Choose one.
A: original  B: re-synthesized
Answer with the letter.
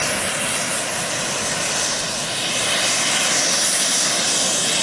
A